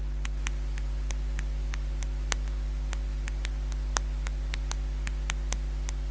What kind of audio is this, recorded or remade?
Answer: recorded